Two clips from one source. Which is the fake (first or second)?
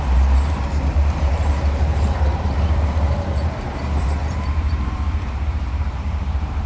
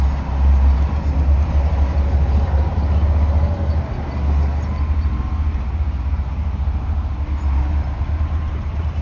first